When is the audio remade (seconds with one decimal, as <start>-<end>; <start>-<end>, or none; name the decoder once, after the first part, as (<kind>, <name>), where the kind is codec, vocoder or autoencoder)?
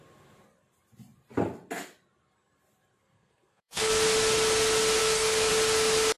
3.0-3.9 (codec, SNAC); 5.0-5.5